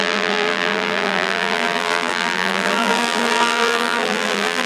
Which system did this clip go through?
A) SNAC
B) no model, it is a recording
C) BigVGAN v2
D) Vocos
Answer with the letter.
C